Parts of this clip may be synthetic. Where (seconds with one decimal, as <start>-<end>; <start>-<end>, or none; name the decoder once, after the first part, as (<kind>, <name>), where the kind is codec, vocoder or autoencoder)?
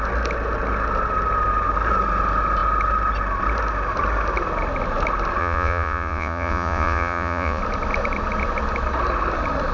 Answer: 5.4-7.6 (vocoder, Vocos)